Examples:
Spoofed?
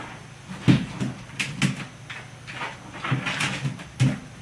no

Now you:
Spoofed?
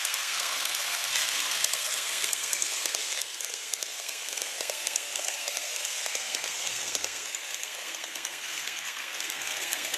yes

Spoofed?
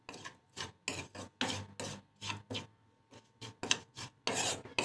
no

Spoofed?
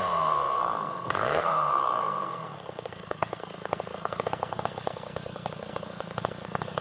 yes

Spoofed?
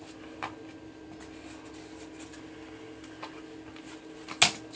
no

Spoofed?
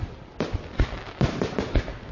no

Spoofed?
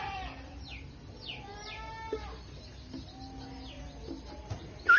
no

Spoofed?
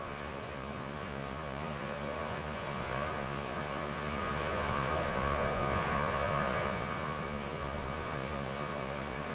yes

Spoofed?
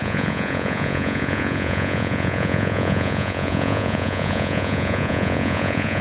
yes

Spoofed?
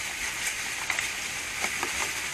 no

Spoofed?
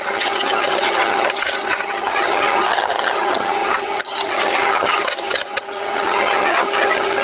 yes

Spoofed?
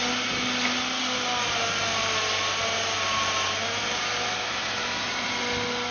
no